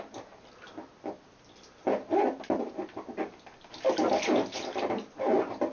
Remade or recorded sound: recorded